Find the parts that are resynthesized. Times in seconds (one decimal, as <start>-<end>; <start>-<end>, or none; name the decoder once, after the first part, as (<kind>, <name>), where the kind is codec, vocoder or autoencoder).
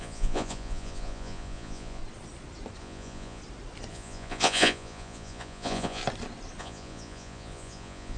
0.0-2.0 (vocoder, Vocos); 2.8-3.4; 3.9-6.0; 6.6-8.2